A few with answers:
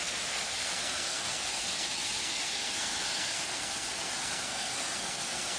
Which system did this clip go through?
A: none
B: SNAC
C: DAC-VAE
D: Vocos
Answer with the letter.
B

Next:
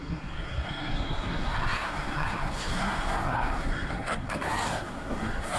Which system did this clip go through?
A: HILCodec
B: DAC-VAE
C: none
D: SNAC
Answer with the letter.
D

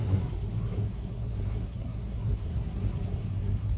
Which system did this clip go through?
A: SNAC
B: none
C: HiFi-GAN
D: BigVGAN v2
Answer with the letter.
A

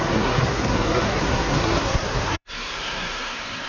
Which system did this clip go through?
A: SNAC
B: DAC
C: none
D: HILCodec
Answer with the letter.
A